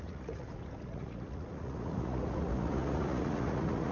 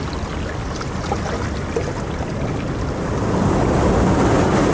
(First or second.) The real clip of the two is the second